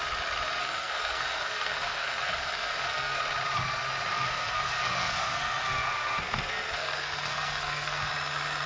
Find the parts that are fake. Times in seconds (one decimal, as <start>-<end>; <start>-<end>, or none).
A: 0.6-3.2; 4.1-8.1